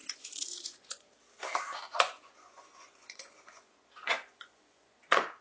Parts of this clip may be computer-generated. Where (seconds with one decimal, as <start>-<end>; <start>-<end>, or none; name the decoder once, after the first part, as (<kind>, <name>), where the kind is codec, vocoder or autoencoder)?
0.0-1.1 (vocoder, Vocos); 1.9-5.4